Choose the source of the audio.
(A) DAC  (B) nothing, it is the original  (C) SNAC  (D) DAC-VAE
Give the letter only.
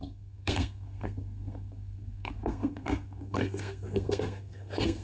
C